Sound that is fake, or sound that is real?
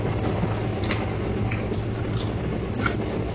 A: real